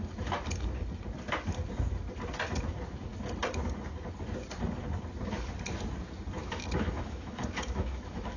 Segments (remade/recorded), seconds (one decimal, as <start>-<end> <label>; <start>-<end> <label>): 0.0-6.4 recorded; 6.4-8.4 remade